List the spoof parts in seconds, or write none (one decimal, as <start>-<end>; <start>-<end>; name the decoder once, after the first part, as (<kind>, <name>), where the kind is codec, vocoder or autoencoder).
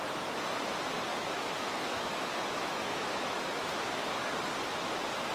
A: 1.1-4.3 (autoencoder, DAC-VAE)